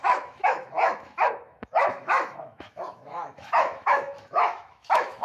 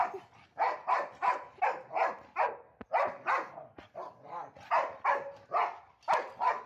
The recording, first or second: second